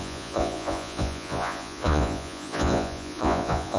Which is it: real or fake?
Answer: fake